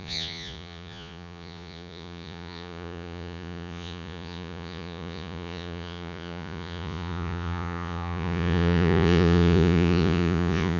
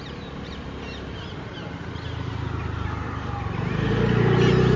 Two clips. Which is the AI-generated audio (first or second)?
first